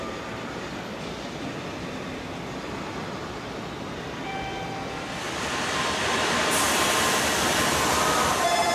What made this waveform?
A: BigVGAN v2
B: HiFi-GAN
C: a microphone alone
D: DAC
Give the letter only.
C